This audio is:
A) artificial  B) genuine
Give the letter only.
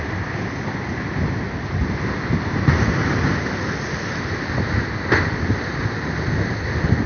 B